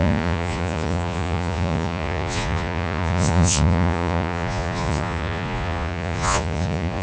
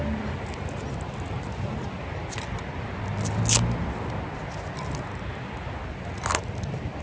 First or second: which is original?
second